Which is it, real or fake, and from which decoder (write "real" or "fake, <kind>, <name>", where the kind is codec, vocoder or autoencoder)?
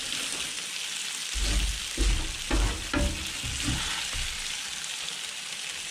real